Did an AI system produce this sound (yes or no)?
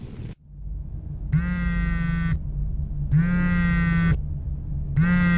no